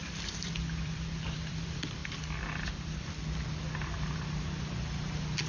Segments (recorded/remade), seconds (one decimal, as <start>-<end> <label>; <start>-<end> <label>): 0.0-2.0 remade; 2.0-5.5 recorded